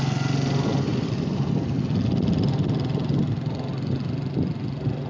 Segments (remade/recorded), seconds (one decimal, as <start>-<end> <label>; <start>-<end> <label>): 0.0-5.1 recorded